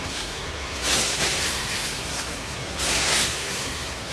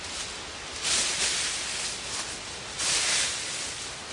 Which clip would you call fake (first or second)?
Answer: first